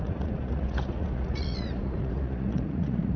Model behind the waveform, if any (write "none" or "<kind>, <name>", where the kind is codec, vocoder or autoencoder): vocoder, Vocos